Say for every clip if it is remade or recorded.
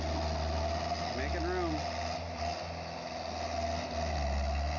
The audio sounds recorded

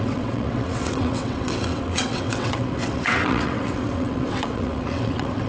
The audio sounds remade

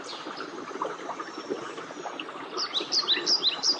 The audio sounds recorded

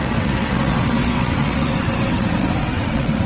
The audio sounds remade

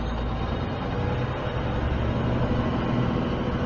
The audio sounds recorded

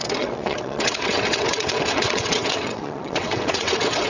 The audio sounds remade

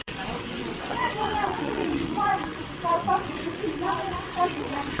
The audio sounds remade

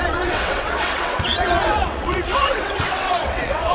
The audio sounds remade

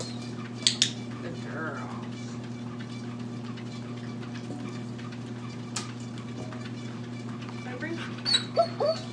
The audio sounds recorded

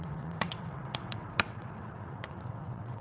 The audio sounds remade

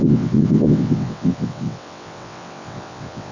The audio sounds remade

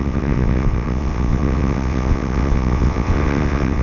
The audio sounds remade